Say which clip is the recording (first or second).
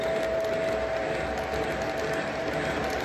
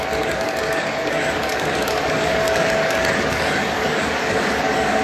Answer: first